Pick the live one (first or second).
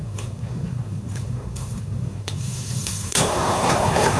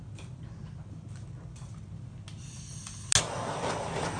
second